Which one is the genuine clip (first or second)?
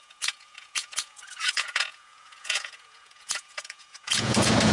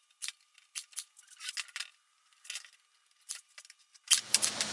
second